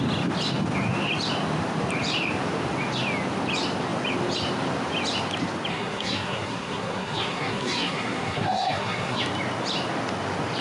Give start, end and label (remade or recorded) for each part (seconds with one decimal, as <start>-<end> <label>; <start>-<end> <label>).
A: 0.0-5.7 recorded; 5.7-9.2 remade; 9.2-10.6 recorded